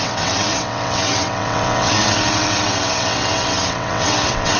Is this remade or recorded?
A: remade